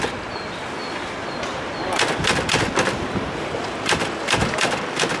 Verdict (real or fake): real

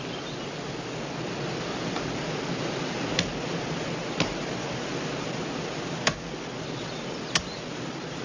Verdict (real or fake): real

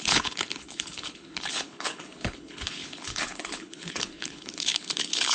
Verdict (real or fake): fake